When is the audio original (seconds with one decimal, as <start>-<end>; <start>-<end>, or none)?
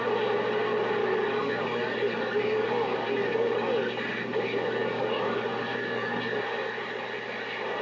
0.0-1.0; 4.2-4.8; 6.2-7.8